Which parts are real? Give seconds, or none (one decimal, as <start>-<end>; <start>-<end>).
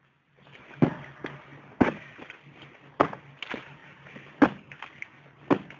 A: 0.0-3.8; 4.8-5.8